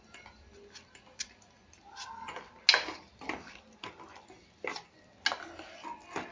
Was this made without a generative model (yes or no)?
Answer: yes